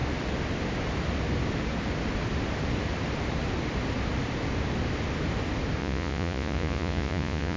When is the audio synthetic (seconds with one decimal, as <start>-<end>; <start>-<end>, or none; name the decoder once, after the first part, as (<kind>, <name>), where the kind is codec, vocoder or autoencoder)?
5.8-7.6 (vocoder, Vocos)